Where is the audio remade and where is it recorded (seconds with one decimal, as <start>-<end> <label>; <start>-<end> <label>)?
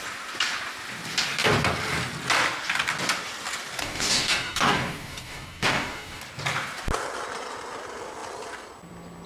0.0-3.8 recorded; 3.8-6.2 remade; 6.2-9.3 recorded